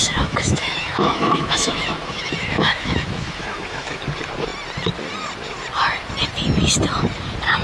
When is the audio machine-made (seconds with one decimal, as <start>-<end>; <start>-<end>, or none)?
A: 0.0-4.0